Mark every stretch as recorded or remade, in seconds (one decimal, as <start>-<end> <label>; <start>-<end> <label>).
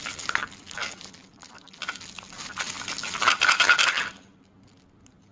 0.0-5.3 recorded